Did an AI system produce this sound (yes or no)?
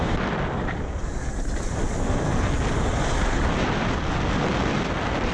no